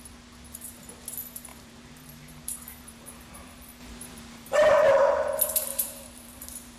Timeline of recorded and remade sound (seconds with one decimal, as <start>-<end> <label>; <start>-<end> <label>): 0.0-1.5 recorded; 1.5-5.3 remade; 5.3-5.7 recorded; 5.7-6.8 remade